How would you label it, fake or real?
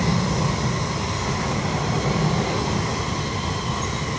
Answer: real